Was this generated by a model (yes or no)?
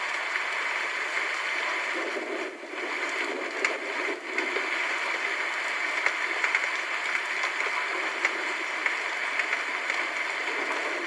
no